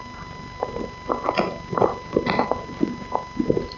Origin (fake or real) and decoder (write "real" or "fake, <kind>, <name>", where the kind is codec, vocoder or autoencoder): real